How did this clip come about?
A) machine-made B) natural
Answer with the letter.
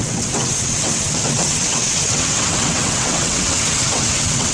A